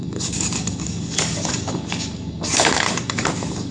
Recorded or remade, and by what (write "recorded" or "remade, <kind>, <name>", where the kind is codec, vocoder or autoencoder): remade, codec, DAC